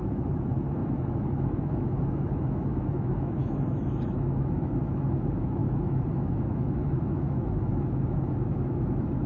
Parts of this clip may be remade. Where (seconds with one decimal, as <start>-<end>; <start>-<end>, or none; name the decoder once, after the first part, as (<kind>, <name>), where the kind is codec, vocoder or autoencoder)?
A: 0.0-9.3 (autoencoder, DAC-VAE)